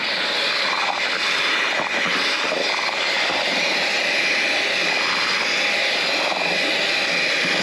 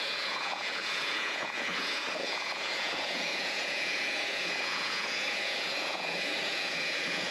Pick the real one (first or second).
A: first